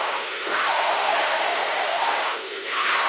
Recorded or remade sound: remade